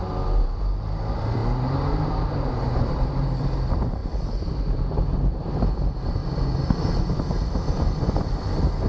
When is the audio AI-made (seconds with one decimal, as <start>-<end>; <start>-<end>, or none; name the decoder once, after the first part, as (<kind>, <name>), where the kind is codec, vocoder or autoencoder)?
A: 0.0-6.2 (vocoder, BigVGAN v2); 7.0-8.9